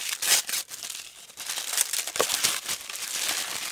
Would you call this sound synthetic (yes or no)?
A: no